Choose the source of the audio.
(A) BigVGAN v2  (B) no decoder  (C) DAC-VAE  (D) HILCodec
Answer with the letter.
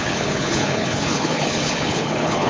D